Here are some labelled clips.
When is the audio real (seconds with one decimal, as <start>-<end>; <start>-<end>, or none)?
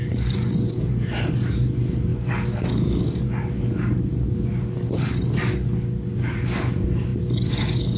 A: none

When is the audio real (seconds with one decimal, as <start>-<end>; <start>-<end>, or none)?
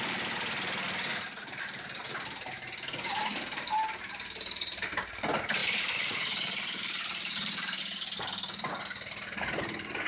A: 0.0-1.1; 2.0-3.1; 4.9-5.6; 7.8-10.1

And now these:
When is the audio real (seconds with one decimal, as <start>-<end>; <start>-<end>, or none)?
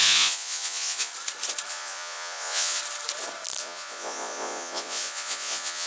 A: 1.1-1.7; 2.8-3.6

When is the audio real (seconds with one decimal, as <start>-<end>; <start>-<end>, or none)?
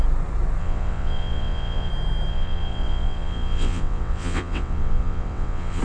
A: 0.0-0.6; 1.9-2.3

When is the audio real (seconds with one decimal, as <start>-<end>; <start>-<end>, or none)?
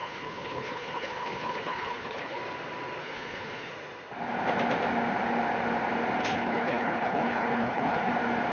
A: 2.4-3.0; 3.7-6.2; 8.1-8.5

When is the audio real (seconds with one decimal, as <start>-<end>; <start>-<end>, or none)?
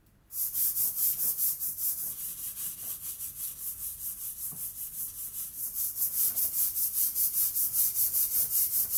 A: 0.0-9.0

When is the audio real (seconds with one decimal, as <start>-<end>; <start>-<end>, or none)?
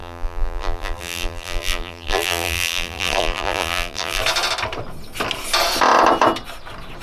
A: 4.2-7.0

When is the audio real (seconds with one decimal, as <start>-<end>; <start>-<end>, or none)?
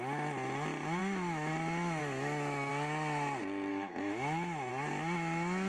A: 0.0-1.0; 1.5-2.0; 2.7-3.7; 4.7-5.7